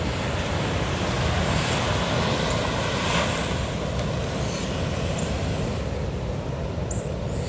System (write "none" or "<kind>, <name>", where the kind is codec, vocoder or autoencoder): none